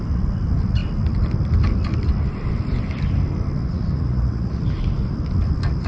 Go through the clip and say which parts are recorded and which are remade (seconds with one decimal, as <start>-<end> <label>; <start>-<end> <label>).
0.0-3.6 recorded; 3.6-4.6 remade; 4.6-5.9 recorded